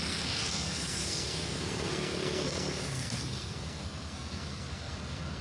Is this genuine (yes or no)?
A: no